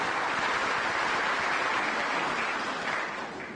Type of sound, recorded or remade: recorded